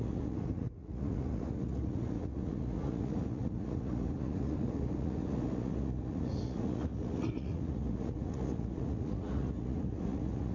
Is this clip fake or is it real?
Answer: fake